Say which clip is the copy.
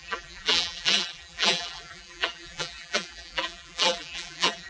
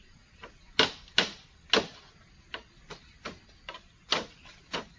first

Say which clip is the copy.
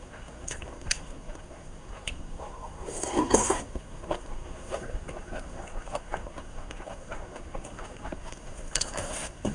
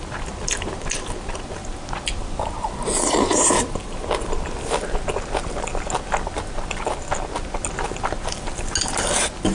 first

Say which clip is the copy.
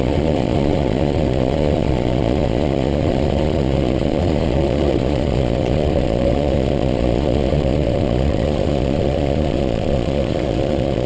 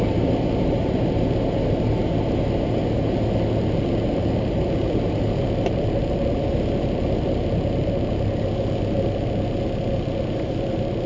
first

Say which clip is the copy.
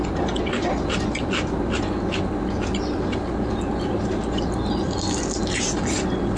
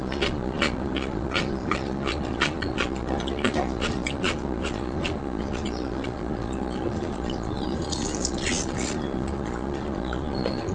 second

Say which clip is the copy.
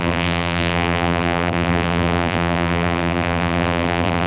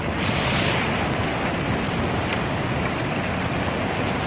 first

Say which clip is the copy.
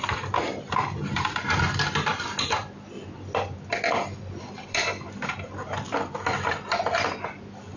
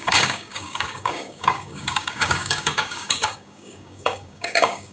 second